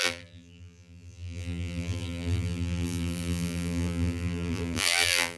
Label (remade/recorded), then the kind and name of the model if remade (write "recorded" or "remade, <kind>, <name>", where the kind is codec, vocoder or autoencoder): remade, vocoder, BigVGAN v2